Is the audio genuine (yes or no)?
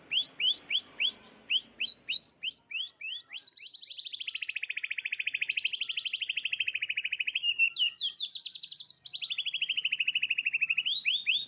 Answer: yes